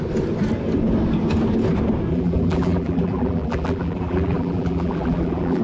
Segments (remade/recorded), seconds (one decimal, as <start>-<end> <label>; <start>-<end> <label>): 0.0-2.1 recorded; 2.1-5.6 remade